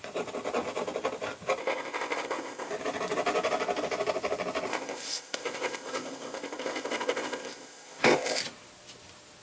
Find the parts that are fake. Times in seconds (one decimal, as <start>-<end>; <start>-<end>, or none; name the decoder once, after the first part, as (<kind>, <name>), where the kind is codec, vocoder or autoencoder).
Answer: 1.6-2.7 (codec, ZipCodec); 4.7-8.4